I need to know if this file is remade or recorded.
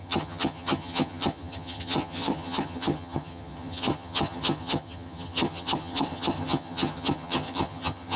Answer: remade